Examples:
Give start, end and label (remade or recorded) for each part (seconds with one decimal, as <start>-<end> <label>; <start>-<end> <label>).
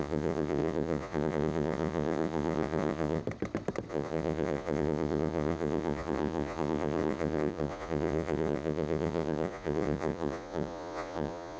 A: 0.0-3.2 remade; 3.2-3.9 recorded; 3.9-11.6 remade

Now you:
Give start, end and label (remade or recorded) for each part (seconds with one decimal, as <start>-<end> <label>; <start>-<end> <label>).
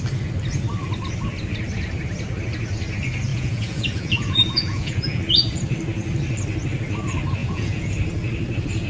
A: 0.0-3.3 recorded; 3.3-5.2 remade; 5.2-7.4 recorded; 7.4-7.9 remade; 7.9-8.9 recorded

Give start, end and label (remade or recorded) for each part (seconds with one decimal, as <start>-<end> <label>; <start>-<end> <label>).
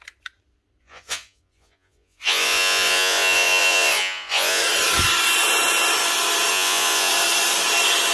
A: 0.0-0.8 recorded; 0.8-4.6 remade; 4.6-6.5 recorded; 6.5-7.1 remade; 7.1-8.1 recorded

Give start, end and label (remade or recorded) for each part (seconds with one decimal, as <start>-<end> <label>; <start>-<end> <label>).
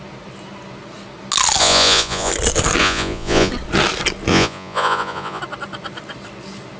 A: 0.0-1.6 recorded; 1.6-2.3 remade; 2.3-2.8 recorded; 2.8-3.5 remade; 3.5-4.3 recorded; 4.3-5.4 remade; 5.4-6.8 recorded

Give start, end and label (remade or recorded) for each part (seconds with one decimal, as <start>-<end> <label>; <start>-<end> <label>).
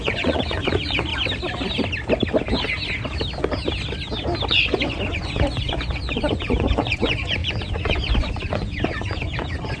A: 0.0-1.1 remade; 1.1-4.5 recorded; 4.5-9.8 remade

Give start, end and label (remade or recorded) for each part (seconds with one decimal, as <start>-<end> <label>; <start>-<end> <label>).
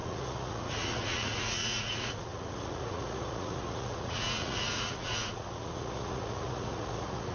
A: 0.0-7.3 remade